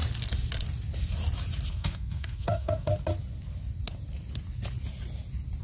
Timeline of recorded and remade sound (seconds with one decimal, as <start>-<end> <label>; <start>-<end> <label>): 0.0-1.7 recorded; 1.7-2.9 remade; 2.9-5.6 recorded